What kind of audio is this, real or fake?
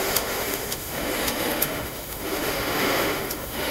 fake